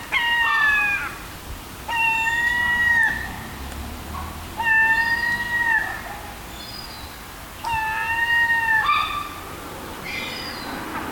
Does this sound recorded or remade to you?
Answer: recorded